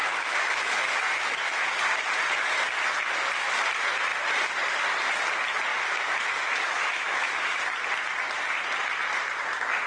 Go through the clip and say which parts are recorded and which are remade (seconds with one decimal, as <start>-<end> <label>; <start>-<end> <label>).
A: 0.0-1.7 remade; 1.7-5.7 recorded; 5.7-7.6 remade; 7.6-9.9 recorded